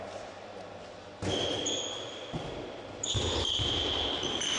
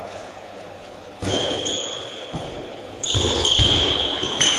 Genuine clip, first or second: first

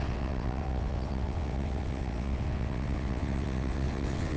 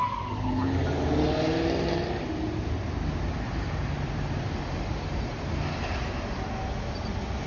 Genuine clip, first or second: second